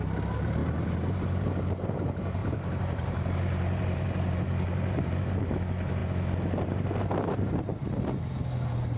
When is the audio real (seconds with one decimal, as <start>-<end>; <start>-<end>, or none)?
0.0-0.6; 1.5-2.4; 5.3-9.0